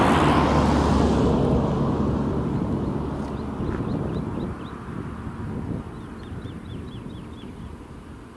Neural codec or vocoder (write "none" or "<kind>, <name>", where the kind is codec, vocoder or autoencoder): none